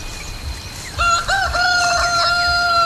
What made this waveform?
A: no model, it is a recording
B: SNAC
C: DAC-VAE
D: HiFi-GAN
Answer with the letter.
A